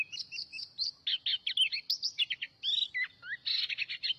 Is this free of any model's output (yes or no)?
yes